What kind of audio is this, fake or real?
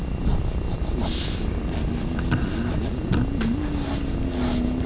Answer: real